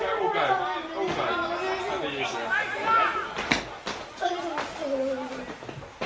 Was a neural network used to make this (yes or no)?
no